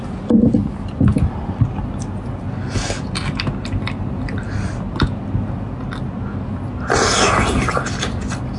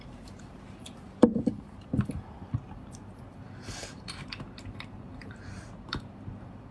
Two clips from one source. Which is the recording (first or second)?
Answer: first